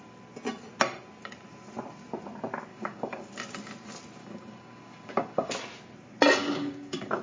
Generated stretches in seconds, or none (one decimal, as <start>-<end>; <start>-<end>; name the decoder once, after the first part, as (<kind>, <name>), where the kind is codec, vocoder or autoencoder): 2.7-3.3 (codec, DAC); 4.2-5.5; 6.4-7.2